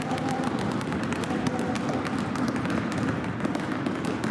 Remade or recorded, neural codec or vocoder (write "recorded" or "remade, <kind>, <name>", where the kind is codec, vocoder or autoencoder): recorded